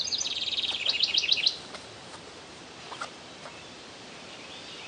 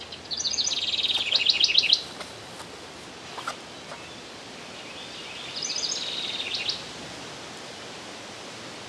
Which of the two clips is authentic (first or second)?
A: second